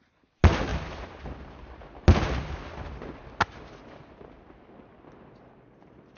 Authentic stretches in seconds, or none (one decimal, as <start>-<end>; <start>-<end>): 0.0-6.2